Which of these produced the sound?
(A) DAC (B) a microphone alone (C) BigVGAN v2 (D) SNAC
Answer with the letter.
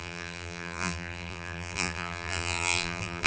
C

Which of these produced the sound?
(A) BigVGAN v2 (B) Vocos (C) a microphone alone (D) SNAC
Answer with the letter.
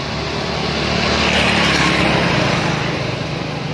C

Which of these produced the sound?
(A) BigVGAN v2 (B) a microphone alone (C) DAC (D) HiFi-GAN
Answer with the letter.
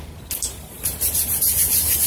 B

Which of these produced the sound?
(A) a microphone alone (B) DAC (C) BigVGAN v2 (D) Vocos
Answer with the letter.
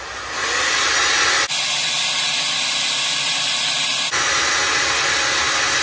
A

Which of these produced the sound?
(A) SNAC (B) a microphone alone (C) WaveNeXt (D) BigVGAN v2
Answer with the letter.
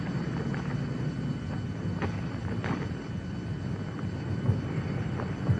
D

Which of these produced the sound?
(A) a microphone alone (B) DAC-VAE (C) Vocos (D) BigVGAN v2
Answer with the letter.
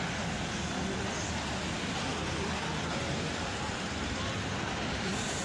D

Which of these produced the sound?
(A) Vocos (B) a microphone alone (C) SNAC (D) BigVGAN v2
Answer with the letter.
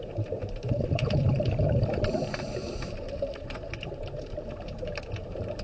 D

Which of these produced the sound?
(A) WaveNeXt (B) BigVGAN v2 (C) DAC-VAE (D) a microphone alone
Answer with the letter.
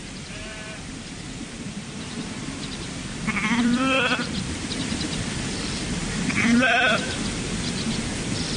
B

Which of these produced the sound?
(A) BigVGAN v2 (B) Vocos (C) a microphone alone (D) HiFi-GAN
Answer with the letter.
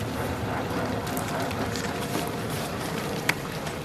A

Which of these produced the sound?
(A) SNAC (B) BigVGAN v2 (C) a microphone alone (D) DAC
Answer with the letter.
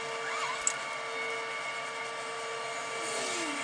C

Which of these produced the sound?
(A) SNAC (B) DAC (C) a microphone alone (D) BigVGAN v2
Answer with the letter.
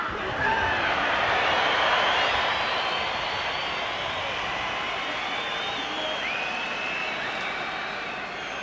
D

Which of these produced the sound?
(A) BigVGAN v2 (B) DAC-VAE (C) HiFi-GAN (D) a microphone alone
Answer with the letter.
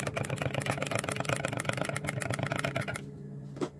D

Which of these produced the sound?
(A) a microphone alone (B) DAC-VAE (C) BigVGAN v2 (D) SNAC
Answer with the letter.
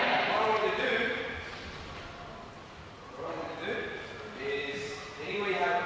C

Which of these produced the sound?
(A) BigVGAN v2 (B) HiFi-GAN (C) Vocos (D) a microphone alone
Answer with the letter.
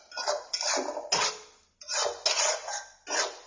D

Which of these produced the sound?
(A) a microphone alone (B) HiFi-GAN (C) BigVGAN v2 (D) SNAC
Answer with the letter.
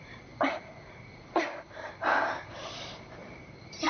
C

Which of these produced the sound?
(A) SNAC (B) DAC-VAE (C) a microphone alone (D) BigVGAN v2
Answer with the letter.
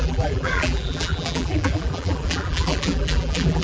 D